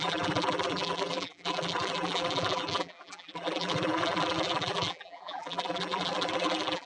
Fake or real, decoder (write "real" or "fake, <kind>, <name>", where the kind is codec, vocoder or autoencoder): fake, vocoder, BigVGAN v2